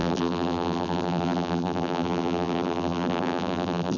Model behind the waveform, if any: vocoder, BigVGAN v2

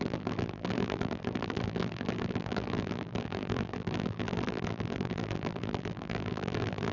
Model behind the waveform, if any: vocoder, BigVGAN v2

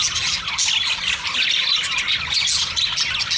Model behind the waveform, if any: none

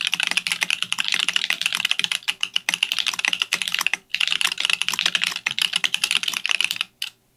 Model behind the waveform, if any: none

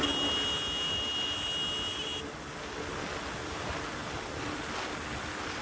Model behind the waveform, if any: none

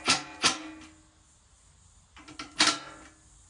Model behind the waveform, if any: none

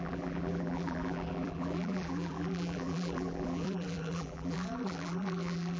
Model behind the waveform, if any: vocoder, BigVGAN v2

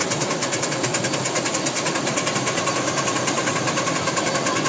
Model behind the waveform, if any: none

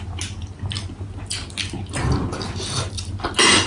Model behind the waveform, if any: none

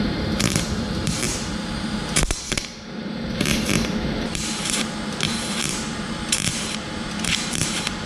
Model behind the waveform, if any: vocoder, BigVGAN v2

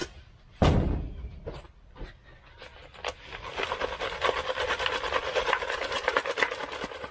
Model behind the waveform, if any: none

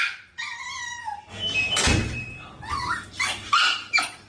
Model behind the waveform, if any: vocoder, BigVGAN v2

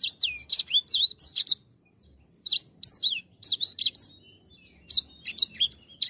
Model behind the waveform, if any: vocoder, BigVGAN v2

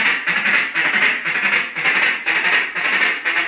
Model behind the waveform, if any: vocoder, BigVGAN v2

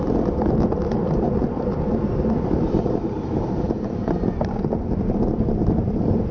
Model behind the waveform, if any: vocoder, BigVGAN v2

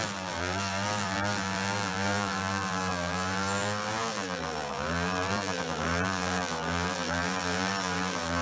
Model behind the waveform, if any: vocoder, BigVGAN v2